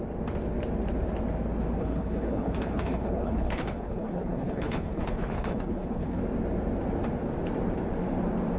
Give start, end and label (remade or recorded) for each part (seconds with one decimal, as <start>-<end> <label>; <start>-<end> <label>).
0.0-1.8 recorded; 1.8-6.2 remade; 6.2-8.6 recorded